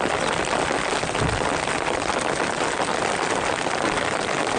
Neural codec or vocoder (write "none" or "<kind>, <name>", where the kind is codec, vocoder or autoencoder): none